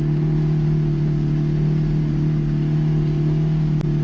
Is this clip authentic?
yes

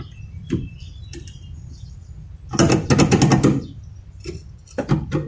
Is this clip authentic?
yes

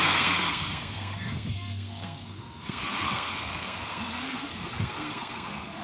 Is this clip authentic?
no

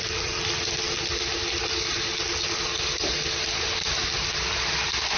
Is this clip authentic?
yes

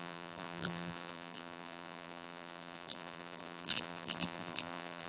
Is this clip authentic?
no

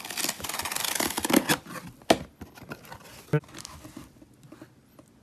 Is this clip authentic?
yes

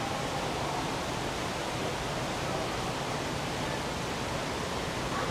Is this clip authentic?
yes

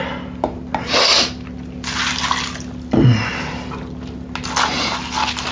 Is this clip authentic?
yes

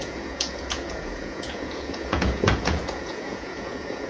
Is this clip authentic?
no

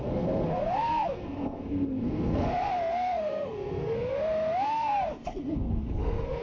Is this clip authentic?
no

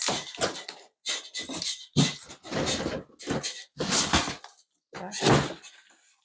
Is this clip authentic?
yes